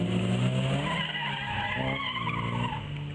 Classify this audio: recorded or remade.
recorded